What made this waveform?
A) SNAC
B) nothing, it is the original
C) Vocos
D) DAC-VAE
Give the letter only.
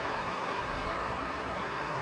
A